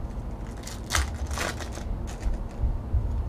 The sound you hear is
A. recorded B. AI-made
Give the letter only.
A